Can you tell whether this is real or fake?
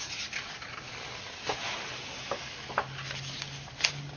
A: real